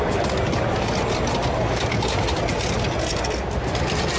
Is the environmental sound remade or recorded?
recorded